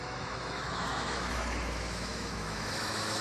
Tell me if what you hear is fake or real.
fake